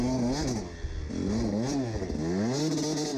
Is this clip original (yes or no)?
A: yes